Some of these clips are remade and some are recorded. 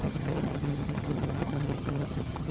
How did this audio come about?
remade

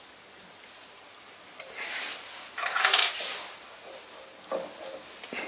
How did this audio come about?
recorded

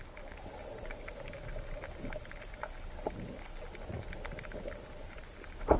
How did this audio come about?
recorded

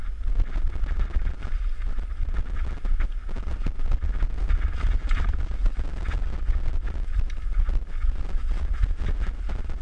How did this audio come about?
recorded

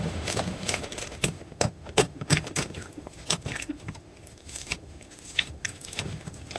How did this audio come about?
remade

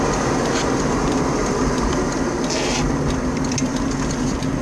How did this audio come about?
recorded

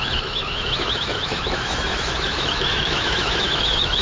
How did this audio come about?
remade